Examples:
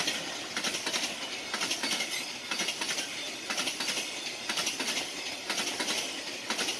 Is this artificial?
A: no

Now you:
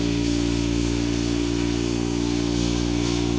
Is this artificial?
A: yes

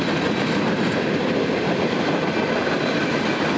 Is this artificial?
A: no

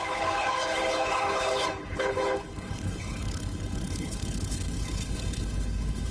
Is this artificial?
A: yes